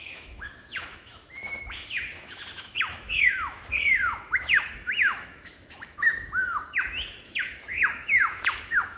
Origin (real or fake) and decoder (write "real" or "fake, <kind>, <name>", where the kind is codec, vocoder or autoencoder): fake, autoencoder, DAC-VAE